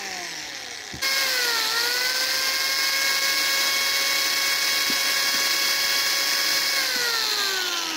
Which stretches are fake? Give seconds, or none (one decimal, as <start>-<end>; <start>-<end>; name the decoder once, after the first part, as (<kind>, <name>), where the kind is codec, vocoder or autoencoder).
5.0-6.7 (vocoder, BigVGAN v2)